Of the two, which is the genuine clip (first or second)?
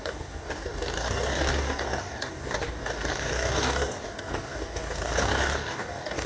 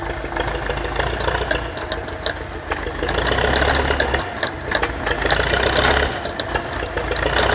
second